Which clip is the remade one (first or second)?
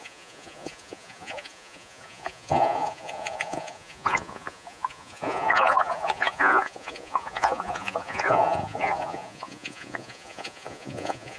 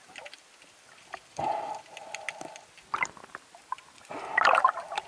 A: first